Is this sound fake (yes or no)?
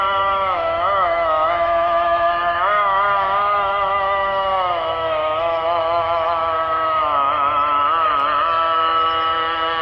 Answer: yes